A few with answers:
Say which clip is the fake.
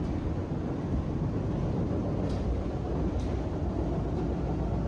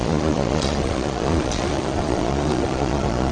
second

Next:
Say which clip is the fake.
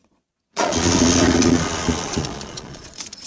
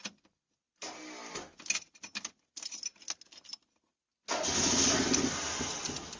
first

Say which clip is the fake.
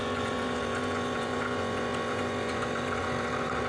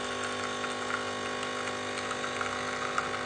first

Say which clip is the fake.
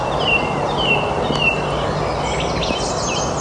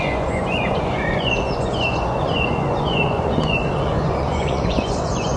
second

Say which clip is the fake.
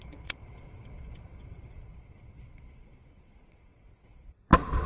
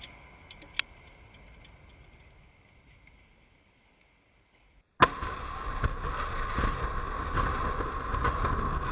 first